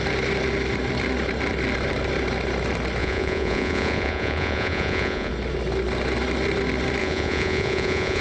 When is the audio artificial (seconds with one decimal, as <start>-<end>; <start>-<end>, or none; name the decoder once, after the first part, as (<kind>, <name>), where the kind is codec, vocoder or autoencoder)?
3.0-5.3 (vocoder, Vocos); 7.0-8.2